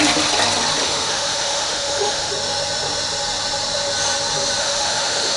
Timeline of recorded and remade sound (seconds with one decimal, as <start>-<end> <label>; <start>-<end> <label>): 0.0-0.8 recorded; 0.8-2.3 remade; 2.3-4.6 recorded; 4.6-5.4 remade